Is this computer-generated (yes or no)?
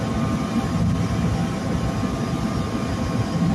no